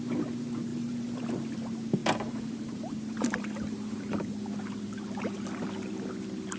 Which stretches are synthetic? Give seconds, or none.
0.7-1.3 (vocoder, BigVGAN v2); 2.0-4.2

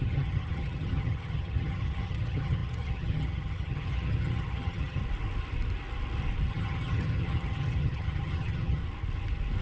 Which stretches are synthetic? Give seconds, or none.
0.0-5.0 (vocoder, HiFi-GAN); 6.5-8.8

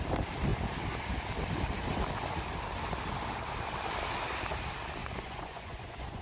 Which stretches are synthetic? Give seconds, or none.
5.0-6.2 (vocoder, Vocos)

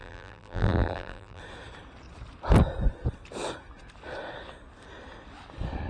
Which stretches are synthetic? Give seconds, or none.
0.0-1.4 (vocoder, BigVGAN v2)